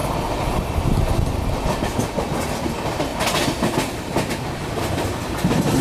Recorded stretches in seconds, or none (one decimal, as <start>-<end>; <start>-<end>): 0.0-5.8